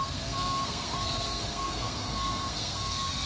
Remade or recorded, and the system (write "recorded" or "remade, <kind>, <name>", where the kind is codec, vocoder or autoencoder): remade, codec, SNAC